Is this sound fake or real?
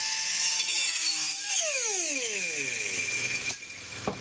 fake